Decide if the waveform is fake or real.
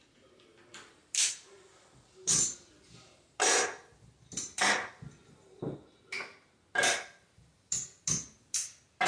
real